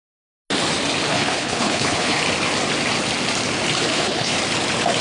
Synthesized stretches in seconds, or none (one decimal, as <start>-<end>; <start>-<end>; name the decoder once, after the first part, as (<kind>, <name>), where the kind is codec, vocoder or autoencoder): 1.1-2.2 (codec, HILCodec); 3.9-4.4